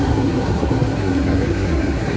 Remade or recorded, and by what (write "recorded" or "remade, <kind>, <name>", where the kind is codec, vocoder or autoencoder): remade, codec, SNAC